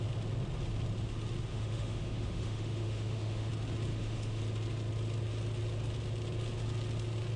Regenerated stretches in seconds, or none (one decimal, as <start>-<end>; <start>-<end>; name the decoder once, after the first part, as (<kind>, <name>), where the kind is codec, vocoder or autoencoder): 1.5-3.5 (autoencoder, DAC-VAE); 3.9-4.4